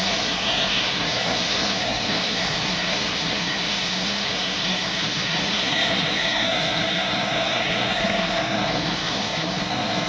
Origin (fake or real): fake